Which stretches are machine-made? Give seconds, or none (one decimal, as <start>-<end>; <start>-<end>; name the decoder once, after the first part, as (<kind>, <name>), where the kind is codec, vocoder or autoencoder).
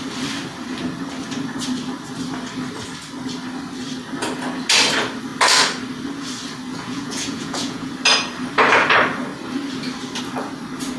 6.7-7.9 (vocoder, Vocos)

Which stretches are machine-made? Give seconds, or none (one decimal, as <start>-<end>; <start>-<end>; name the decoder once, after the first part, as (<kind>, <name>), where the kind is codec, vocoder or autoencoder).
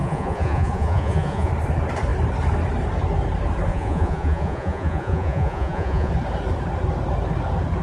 0.0-1.5 (vocoder, Vocos); 3.7-6.1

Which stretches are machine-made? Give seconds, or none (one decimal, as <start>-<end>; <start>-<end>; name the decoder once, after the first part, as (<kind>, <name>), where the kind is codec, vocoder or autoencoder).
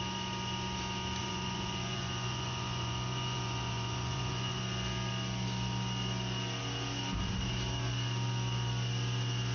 1.2-4.6 (vocoder, Vocos)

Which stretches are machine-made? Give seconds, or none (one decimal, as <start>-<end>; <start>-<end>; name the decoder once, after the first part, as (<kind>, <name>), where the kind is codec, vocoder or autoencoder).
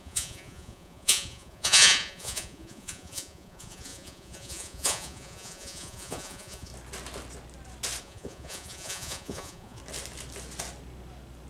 0.0-6.7 (vocoder, Vocos); 8.0-9.8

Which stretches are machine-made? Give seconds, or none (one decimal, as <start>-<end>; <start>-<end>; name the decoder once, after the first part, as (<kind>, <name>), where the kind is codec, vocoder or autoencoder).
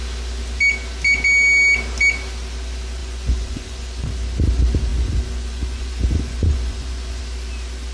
3.0-4.1 (vocoder, Vocos); 4.9-7.2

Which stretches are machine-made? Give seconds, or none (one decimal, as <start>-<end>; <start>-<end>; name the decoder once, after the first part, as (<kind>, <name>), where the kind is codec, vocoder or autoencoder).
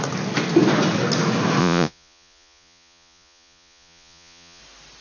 1.6-4.6 (vocoder, Vocos)